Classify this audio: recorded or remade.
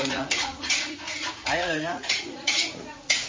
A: remade